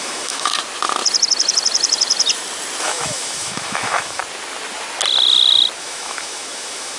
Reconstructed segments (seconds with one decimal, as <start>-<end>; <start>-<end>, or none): 0.0-0.5; 2.8-4.2; 5.8-7.0